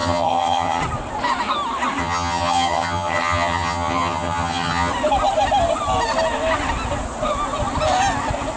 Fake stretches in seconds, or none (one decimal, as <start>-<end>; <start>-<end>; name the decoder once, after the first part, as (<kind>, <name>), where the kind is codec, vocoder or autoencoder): 0.0-0.8 (vocoder, HiFi-GAN); 2.0-4.9